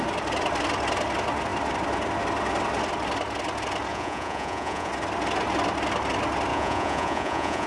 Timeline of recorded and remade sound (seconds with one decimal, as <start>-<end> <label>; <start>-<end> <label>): 0.0-3.9 recorded; 3.9-4.9 remade; 4.9-6.5 recorded; 6.5-7.7 remade